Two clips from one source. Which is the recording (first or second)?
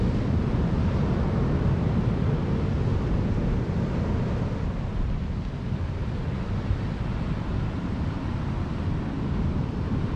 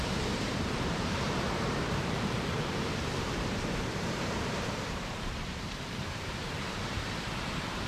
first